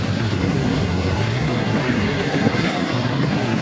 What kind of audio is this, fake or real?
fake